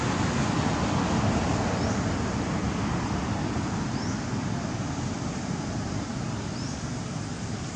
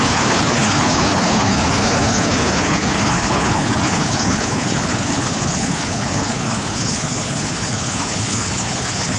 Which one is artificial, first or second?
second